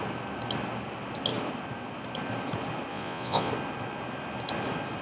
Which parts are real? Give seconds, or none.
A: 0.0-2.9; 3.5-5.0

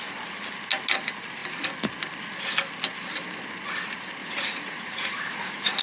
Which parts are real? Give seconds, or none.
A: 0.0-4.2

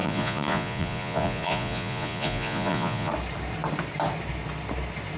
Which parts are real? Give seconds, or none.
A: 3.1-5.2

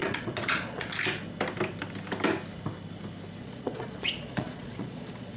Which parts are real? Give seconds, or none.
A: 0.9-3.4

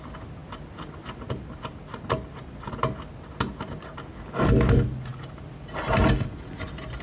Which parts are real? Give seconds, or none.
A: 0.0-7.0

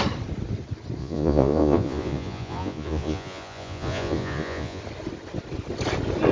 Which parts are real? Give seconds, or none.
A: 0.0-1.0; 4.8-6.3

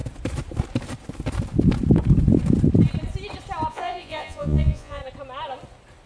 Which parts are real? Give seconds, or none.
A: 0.0-3.7; 5.0-6.1

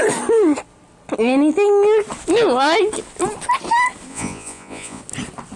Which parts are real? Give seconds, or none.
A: 0.0-4.1; 5.0-5.6